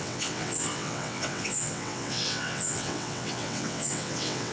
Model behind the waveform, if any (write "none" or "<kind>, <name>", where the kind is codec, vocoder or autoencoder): vocoder, WaveNeXt